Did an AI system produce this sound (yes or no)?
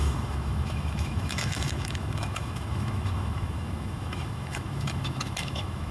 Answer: yes